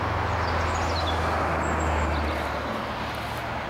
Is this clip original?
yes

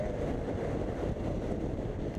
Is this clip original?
yes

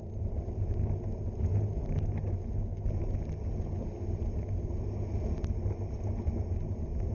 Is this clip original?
yes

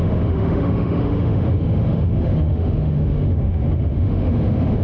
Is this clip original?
no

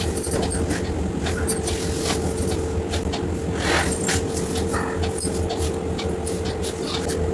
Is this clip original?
yes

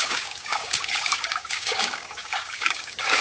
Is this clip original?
no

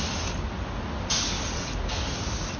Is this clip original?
yes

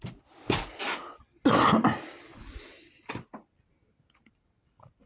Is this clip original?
yes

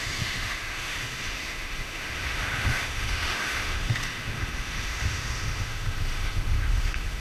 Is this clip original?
no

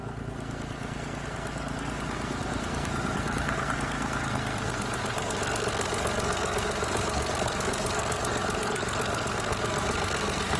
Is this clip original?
no